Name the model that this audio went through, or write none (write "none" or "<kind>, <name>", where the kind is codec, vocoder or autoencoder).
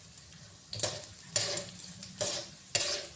none